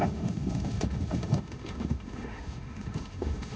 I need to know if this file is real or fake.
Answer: fake